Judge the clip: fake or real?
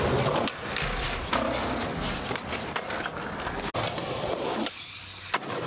real